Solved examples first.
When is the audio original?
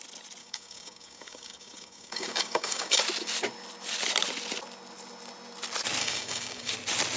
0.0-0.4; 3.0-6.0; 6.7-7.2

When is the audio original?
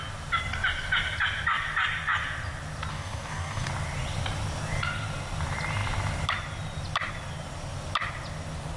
0.0-2.9; 3.7-8.8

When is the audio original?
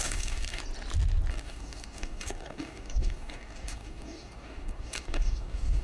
0.6-1.3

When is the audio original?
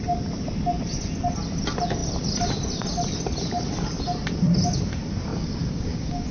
0.0-5.3